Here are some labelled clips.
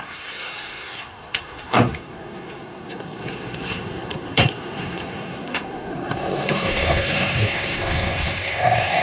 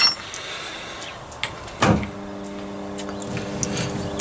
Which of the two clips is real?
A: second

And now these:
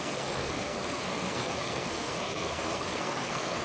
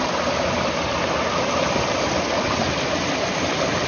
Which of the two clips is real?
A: second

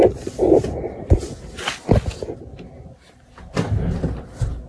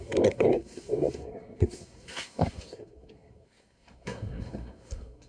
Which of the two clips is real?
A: first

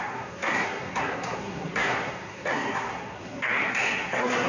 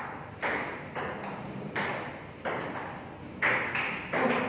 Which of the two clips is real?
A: second